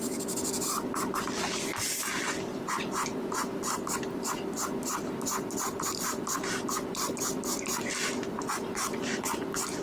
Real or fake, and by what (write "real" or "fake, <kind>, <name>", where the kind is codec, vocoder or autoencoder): real